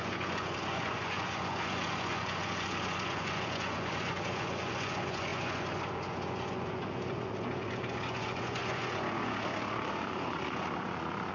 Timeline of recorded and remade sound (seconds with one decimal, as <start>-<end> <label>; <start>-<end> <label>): 0.0-11.3 remade